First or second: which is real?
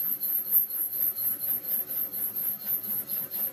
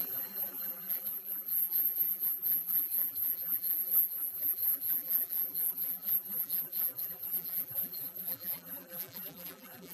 first